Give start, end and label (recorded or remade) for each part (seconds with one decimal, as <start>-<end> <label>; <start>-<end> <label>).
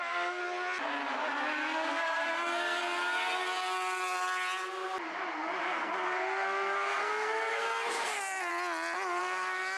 0.0-0.4 remade; 0.4-1.9 recorded; 1.9-2.8 remade; 2.8-5.6 recorded; 5.6-8.5 remade; 8.5-9.2 recorded; 9.2-9.8 remade